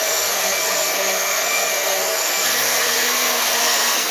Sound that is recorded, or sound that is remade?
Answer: remade